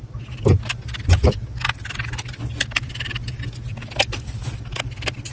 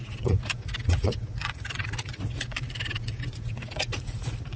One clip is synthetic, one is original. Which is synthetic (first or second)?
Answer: second